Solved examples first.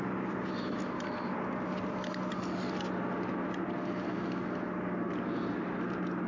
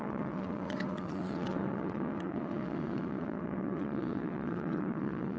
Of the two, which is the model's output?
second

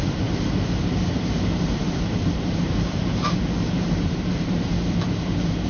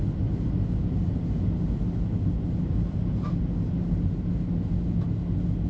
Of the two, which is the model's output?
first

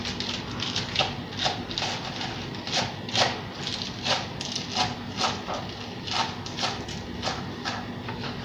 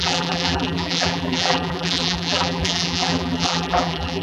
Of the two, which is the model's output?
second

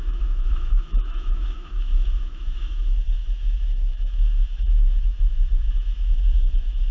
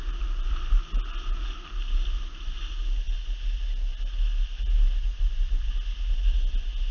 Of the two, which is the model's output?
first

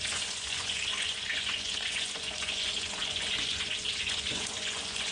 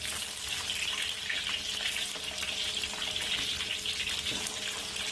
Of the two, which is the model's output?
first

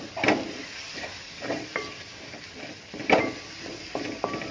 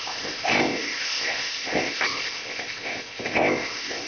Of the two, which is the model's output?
second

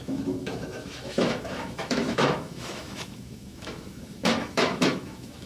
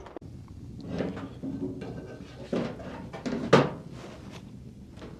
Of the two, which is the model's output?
first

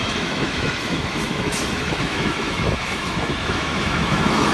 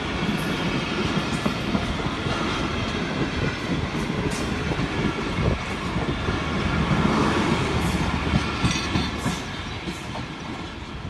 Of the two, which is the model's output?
first